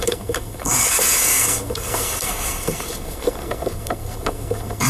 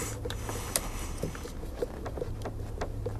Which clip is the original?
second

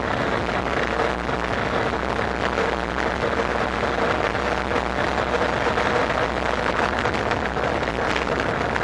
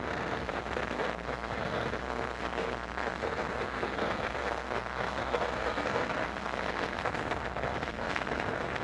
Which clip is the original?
first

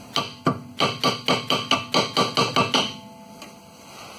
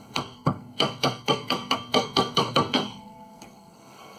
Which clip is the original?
first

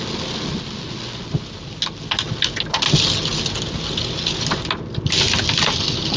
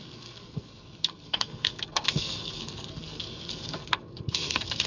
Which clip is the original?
first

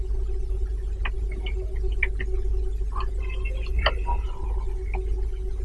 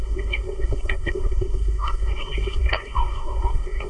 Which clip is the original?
first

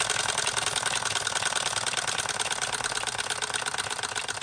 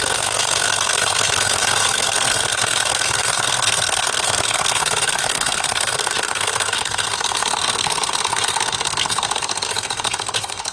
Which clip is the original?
first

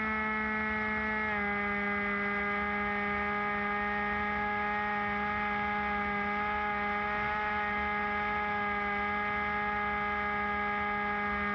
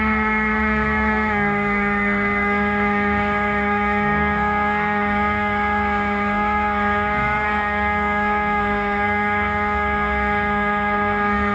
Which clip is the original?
first